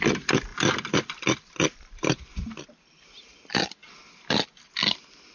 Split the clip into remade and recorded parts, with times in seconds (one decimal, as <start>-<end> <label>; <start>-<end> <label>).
0.0-5.3 recorded